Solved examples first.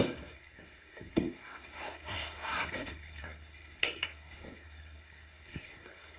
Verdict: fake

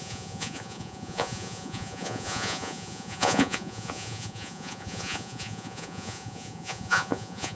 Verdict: fake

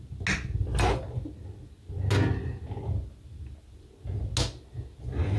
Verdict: real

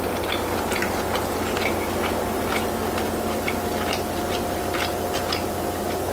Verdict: real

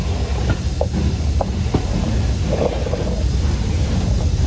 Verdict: real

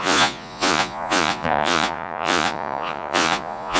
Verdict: fake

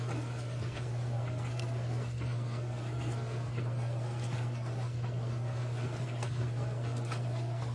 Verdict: fake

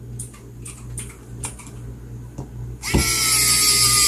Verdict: real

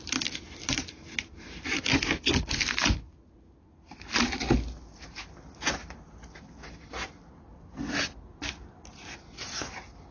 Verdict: real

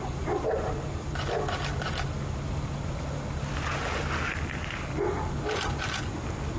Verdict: real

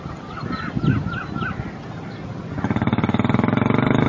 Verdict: real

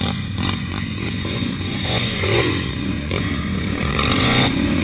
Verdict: fake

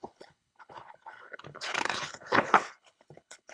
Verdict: fake